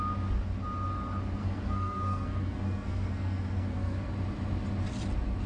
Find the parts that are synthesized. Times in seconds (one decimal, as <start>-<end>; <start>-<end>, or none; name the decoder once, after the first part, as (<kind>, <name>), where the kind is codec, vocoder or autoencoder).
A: 1.4-4.1 (codec, SNAC)